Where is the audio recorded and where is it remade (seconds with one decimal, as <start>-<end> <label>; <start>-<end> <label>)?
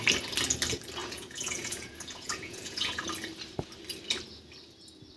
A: 0.0-1.0 recorded; 1.0-3.0 remade; 3.0-5.2 recorded